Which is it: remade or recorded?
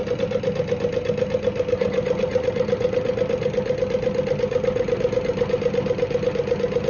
recorded